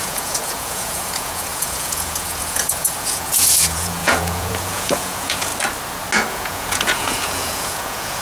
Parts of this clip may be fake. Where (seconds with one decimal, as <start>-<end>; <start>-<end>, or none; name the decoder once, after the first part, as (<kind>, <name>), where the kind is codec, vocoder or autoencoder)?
0.0-5.5 (vocoder, Vocos); 6.3-8.2

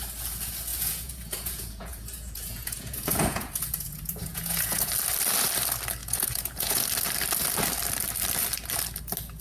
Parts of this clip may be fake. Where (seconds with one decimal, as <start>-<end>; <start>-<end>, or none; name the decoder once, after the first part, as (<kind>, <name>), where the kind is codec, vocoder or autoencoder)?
0.7-4.9 (vocoder, Vocos); 6.0-6.8